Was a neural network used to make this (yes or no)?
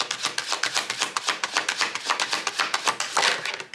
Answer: no